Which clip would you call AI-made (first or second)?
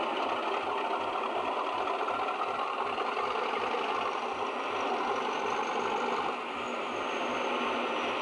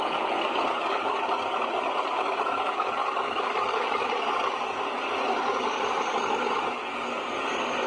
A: second